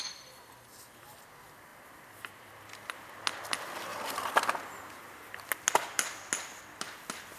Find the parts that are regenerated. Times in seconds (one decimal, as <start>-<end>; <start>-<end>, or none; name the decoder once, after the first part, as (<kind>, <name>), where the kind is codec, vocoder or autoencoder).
none